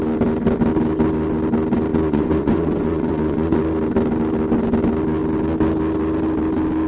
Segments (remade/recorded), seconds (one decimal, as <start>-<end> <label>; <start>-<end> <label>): 0.0-1.9 recorded; 1.9-3.6 remade; 3.6-6.9 recorded